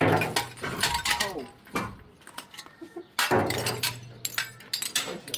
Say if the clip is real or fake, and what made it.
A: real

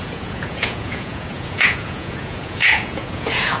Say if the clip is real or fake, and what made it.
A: fake, vocoder, Vocos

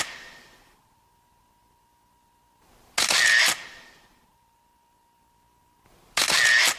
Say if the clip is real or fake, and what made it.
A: real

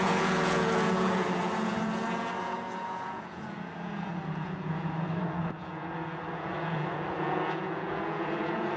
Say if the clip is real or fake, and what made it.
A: fake, vocoder, Vocos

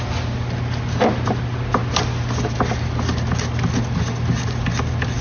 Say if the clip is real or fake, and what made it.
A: real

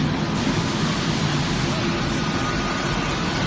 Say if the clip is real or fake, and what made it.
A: real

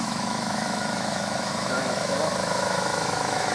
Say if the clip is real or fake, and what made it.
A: fake, autoencoder, DAC-VAE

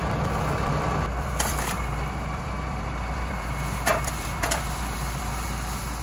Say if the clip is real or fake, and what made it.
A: real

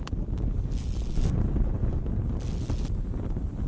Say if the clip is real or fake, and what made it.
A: real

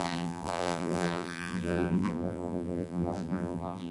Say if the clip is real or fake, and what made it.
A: fake, vocoder, BigVGAN v2